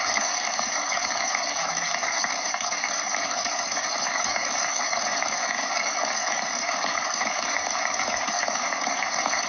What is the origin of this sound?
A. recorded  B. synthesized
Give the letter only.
B